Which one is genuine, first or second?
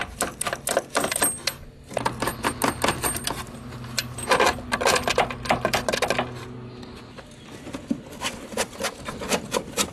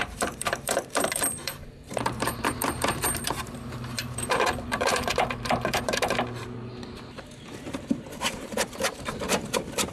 first